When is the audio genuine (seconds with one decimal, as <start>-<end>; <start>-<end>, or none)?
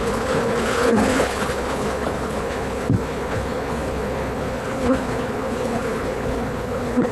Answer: none